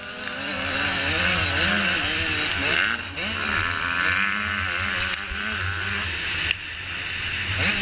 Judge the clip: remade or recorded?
recorded